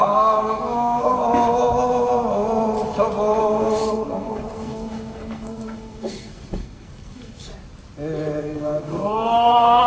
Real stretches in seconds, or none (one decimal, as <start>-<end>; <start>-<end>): 1.2-3.4; 7.5-8.4

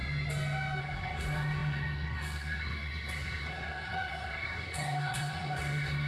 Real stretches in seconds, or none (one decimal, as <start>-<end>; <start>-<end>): 0.0-0.8